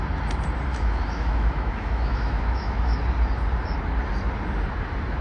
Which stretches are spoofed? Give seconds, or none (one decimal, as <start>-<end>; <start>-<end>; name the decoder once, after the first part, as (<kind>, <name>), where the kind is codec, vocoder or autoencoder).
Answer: 0.7-3.0 (autoencoder, DAC-VAE)